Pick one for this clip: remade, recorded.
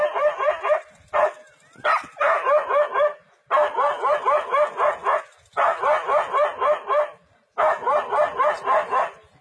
recorded